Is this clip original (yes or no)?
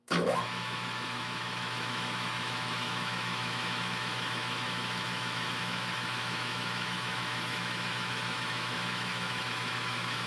no